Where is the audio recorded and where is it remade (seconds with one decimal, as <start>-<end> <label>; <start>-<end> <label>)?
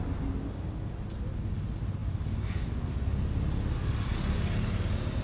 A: 0.0-2.0 recorded; 2.0-2.7 remade; 2.7-5.2 recorded